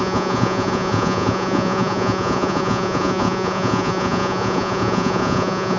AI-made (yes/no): yes